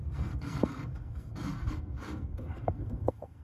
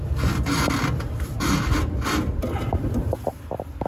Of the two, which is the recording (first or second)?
second